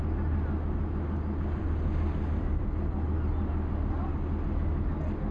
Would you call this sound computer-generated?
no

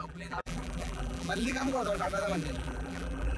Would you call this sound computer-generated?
yes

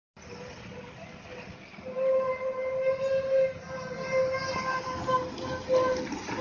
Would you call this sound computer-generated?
no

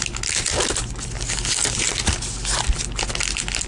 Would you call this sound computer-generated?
no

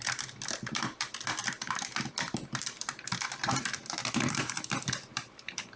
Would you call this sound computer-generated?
yes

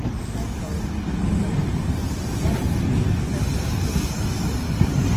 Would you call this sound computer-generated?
no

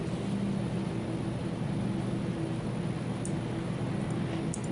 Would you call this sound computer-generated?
no